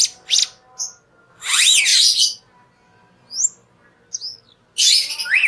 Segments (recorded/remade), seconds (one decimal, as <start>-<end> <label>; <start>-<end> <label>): 0.0-5.5 recorded